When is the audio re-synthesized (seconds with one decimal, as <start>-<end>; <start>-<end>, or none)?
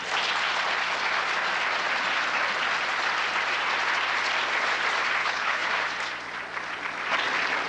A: 5.2-5.7